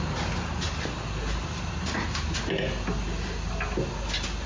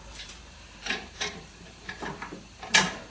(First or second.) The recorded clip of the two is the first